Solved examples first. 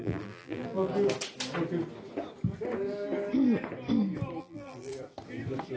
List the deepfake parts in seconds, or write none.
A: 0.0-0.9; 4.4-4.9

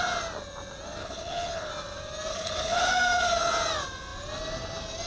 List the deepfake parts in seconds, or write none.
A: 1.0-1.7; 2.3-2.9